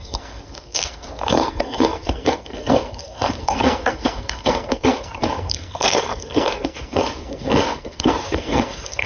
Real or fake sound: fake